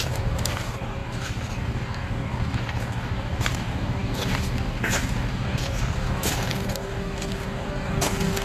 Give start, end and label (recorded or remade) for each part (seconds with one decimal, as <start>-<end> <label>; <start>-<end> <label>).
0.0-8.4 remade